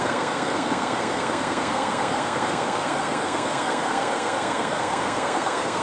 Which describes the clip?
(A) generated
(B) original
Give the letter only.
A